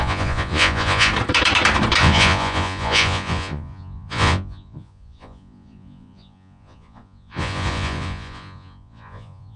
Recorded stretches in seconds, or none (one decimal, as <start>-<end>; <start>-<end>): 1.1-2.0